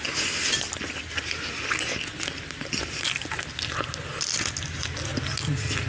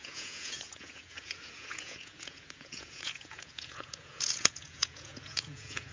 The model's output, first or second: second